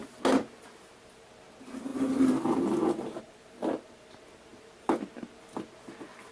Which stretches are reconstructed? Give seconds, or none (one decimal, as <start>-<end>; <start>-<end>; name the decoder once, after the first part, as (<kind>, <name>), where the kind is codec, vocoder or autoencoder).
none